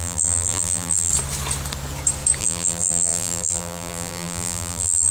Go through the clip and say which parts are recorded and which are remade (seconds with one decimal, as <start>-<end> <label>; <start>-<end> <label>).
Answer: 0.0-1.1 remade; 1.1-2.4 recorded; 2.4-5.1 remade